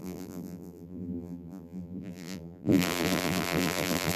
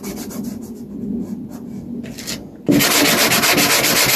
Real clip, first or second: second